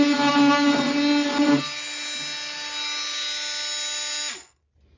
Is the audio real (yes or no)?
yes